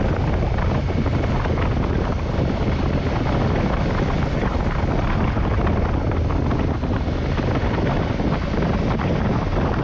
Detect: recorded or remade recorded